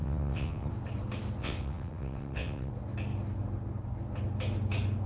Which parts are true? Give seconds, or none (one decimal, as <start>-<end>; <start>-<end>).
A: 0.7-1.4; 2.7-5.1